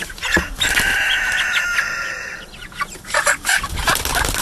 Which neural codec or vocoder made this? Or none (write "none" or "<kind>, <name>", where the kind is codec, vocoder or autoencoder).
none